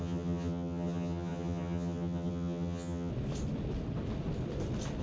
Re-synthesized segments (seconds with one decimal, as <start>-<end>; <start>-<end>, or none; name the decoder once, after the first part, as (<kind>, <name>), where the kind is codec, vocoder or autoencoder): 0.0-3.1 (vocoder, HiFi-GAN)